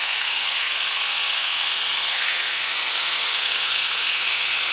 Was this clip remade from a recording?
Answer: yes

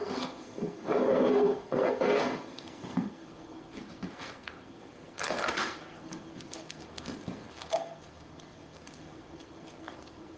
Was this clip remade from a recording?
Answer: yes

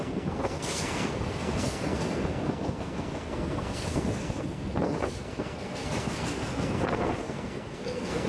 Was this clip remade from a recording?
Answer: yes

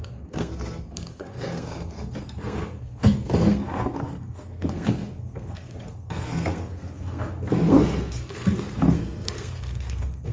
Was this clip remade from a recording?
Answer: yes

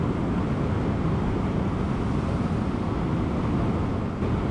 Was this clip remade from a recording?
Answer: no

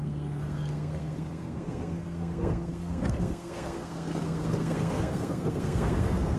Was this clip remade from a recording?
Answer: yes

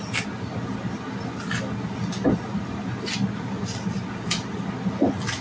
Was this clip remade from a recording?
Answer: no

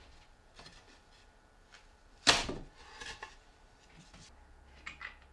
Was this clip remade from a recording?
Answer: no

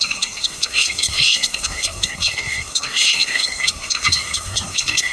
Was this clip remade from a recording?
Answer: yes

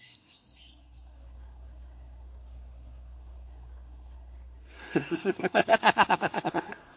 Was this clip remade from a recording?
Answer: yes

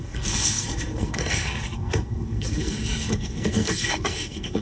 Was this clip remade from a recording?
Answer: yes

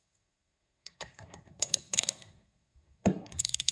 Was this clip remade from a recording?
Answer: yes